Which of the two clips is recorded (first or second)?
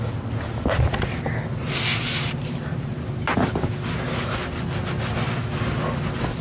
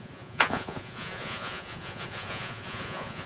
first